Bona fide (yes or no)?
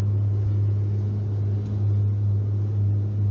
yes